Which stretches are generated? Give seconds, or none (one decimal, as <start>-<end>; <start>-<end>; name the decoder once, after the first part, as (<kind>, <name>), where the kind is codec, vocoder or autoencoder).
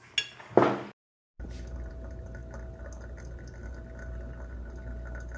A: none